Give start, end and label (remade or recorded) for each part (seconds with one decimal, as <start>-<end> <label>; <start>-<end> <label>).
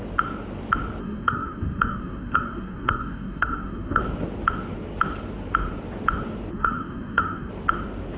0.0-1.0 recorded; 1.0-4.0 remade; 4.0-6.5 recorded; 6.5-7.5 remade; 7.5-8.2 recorded